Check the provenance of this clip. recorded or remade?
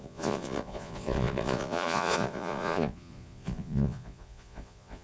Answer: remade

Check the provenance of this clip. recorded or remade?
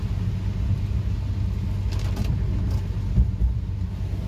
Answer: recorded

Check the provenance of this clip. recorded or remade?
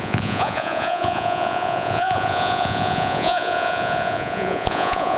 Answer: remade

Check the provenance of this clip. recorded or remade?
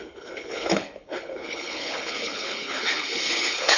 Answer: remade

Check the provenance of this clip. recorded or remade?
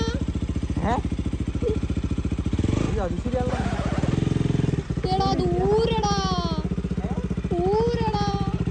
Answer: recorded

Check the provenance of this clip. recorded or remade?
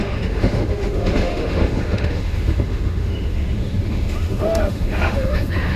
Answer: remade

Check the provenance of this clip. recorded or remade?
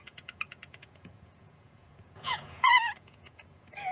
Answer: remade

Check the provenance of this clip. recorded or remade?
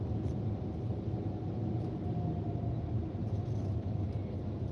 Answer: recorded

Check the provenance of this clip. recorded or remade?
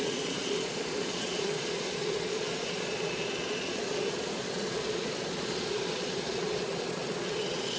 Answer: remade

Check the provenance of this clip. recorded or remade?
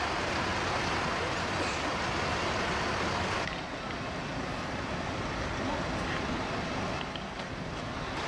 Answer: recorded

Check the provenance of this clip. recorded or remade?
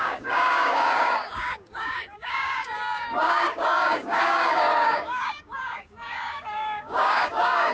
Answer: remade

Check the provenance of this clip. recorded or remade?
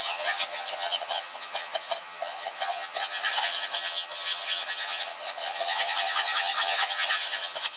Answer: remade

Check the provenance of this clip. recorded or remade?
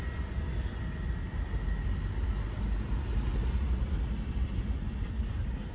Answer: recorded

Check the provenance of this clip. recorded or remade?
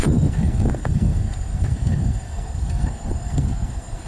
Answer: remade